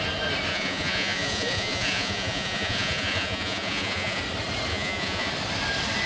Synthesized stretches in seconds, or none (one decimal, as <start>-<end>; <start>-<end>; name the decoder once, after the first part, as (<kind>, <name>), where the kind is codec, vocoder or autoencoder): 0.5-4.2 (vocoder, Vocos); 4.7-5.3